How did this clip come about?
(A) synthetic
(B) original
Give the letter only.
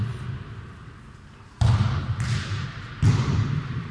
B